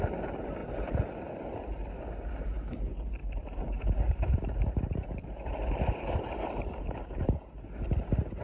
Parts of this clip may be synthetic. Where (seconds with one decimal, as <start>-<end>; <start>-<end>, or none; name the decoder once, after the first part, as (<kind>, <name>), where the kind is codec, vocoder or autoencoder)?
0.6-1.1 (vocoder, BigVGAN v2); 3.2-7.6